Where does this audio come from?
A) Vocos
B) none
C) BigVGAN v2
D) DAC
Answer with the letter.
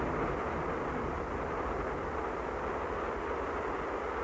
B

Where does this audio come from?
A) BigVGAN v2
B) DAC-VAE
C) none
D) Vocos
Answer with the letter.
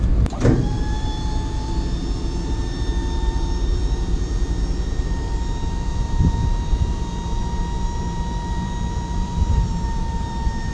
A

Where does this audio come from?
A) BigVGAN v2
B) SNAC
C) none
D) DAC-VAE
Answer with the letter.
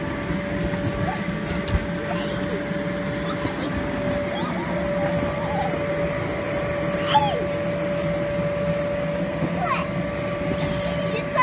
C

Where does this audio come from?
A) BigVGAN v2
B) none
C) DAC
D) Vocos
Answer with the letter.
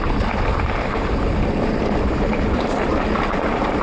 A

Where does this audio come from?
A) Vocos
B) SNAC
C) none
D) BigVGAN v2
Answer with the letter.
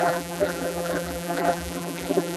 D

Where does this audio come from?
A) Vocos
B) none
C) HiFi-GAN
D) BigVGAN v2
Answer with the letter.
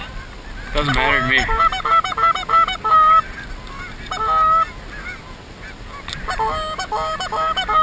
B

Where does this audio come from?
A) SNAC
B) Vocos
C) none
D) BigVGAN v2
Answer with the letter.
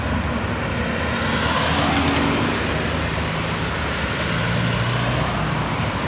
C